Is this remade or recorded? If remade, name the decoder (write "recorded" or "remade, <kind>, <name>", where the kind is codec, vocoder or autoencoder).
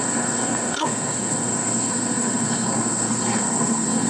remade, codec, SNAC